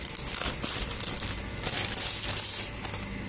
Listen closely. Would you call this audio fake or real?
real